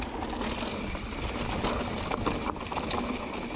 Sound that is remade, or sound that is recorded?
recorded